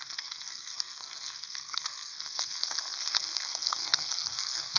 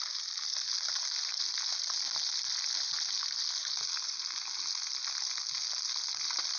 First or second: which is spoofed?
first